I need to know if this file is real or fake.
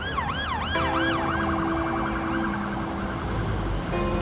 real